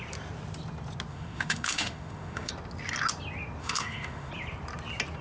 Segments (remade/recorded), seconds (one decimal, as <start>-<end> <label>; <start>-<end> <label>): 0.0-1.1 recorded; 1.1-2.5 remade; 2.5-3.6 recorded; 3.6-4.3 remade; 4.3-5.2 recorded